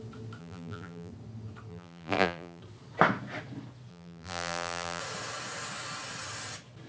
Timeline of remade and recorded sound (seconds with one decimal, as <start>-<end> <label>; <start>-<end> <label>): 0.0-0.4 recorded; 0.4-1.1 remade; 1.1-1.7 recorded; 1.7-2.6 remade; 2.6-3.9 recorded; 3.9-5.0 remade; 5.0-6.9 recorded